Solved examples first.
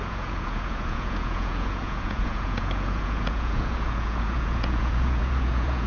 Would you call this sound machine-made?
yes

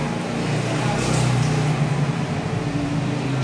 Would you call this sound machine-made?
no